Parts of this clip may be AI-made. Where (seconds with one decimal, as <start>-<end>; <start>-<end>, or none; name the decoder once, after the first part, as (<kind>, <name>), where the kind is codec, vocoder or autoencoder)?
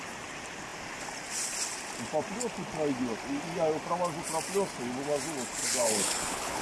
5.6-6.6 (codec, HILCodec)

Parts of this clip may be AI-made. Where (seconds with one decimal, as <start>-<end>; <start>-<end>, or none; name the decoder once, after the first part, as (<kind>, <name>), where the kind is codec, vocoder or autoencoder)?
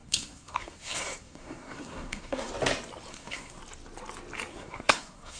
0.0-2.5 (codec, SNAC); 3.1-3.6; 4.5-5.4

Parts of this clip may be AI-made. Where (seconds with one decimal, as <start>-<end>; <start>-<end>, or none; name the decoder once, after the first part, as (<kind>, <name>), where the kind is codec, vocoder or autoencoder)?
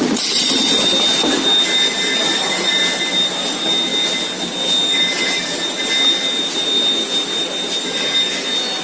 2.2-2.8 (vocoder, Vocos)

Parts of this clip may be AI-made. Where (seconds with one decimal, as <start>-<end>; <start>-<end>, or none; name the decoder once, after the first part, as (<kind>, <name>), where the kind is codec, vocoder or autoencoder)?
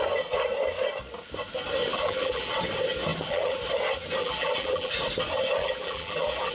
1.9-2.5 (vocoder, BigVGAN v2); 3.1-3.6; 4.2-4.9; 5.6-6.5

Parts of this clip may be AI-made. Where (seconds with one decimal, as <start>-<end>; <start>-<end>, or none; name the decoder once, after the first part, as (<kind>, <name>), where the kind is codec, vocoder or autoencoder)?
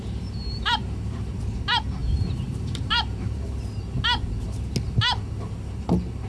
0.4-1.3 (vocoder, BigVGAN v2); 2.0-3.4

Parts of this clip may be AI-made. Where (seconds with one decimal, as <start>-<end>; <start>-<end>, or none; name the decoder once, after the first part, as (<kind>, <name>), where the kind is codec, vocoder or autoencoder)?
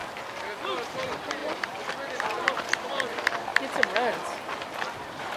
0.8-3.5 (vocoder, BigVGAN v2)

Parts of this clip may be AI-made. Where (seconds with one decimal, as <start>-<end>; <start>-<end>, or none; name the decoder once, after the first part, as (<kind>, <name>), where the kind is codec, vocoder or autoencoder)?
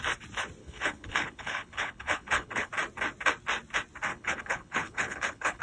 0.6-2.7 (codec, HILCodec); 4.1-5.6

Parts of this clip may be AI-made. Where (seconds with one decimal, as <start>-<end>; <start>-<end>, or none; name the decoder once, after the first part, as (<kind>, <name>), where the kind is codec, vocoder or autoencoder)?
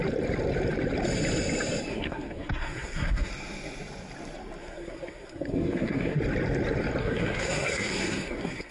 1.9-3.3 (codec, SNAC); 4.6-6.2; 7.0-8.7